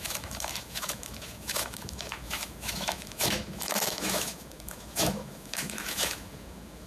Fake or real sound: fake